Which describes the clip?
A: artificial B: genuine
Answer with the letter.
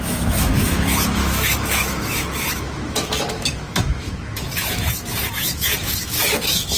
A